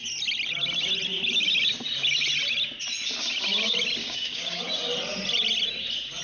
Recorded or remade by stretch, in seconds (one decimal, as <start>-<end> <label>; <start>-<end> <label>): 0.0-4.0 recorded; 4.0-4.6 remade; 4.6-6.2 recorded